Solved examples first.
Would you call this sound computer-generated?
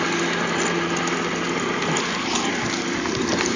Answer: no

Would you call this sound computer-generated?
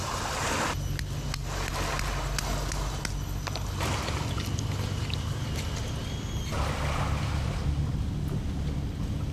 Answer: no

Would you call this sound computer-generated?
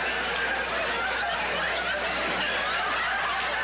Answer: no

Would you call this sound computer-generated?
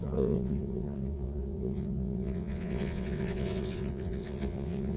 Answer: yes